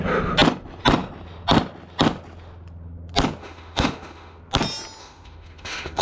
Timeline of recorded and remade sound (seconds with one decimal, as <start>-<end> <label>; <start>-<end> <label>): 0.0-3.4 recorded; 3.4-4.4 remade; 4.4-5.0 recorded; 5.0-6.0 remade